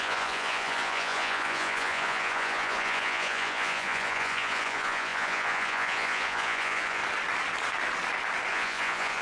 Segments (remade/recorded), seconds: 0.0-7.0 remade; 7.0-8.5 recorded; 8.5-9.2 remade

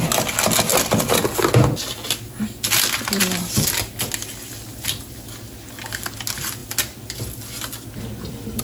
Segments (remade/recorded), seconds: 0.0-8.6 recorded

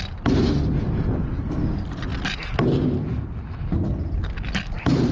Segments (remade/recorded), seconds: 0.0-5.1 recorded